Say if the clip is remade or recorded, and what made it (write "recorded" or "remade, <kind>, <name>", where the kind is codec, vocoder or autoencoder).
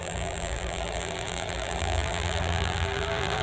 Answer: remade, vocoder, BigVGAN v2